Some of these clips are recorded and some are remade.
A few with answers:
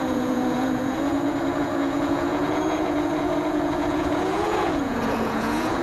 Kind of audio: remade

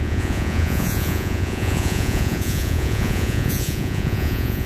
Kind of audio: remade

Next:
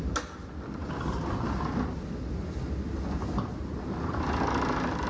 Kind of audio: recorded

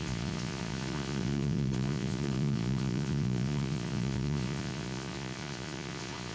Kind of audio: remade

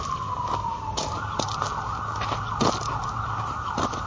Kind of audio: recorded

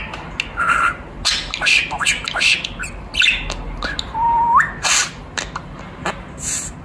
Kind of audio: recorded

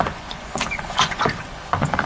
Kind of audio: remade